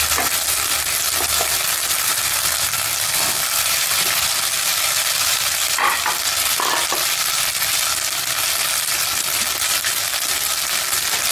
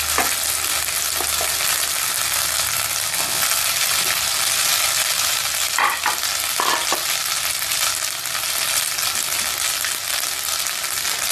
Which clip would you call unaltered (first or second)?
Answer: second